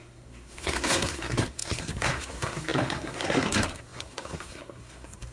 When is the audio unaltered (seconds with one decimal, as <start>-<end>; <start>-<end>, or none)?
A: none